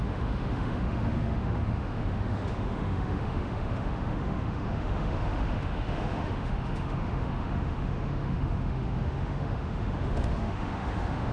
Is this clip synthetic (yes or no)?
yes